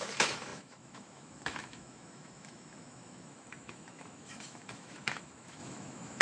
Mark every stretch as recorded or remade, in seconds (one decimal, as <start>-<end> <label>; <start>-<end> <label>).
0.0-6.2 remade